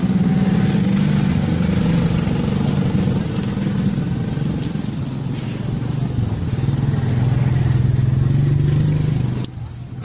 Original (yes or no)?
yes